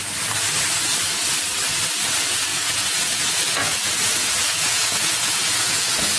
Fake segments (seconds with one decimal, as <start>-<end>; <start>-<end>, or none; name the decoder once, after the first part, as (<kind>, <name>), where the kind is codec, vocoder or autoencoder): 2.5-6.2 (vocoder, Vocos)